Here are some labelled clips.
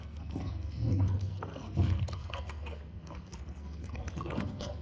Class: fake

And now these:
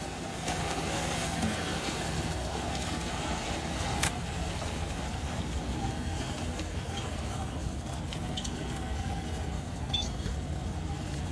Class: fake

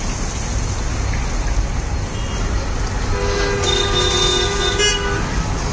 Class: real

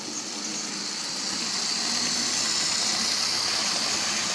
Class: real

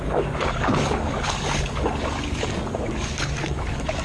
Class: fake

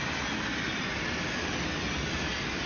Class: real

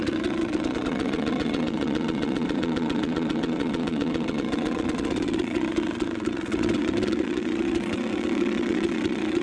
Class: fake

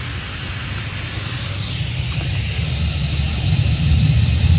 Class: real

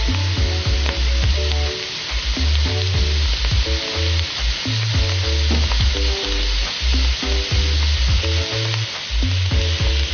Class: real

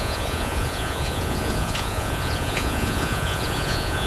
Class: fake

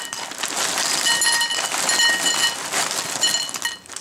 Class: real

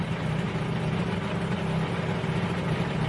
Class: real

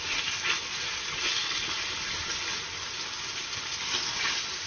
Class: real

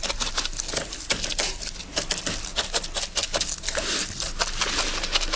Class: real